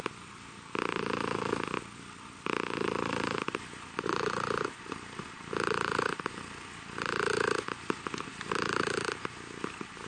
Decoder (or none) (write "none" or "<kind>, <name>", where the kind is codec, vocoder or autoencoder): none